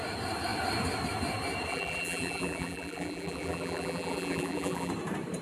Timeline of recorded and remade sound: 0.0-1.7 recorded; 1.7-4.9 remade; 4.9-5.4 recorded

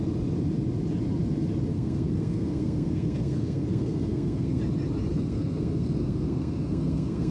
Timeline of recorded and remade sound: 0.0-1.7 recorded; 1.7-4.6 remade; 4.6-5.1 recorded; 5.1-7.3 remade

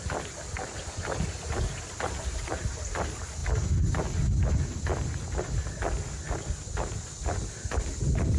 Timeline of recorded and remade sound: 0.0-8.4 recorded